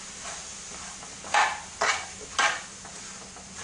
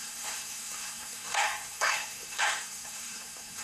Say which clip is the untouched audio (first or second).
first